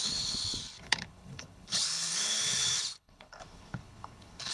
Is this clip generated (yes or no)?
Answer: yes